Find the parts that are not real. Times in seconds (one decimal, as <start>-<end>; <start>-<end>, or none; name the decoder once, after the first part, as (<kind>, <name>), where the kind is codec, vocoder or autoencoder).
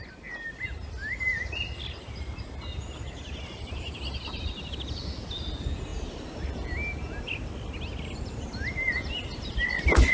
none